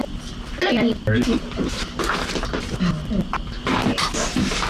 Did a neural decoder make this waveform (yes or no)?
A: no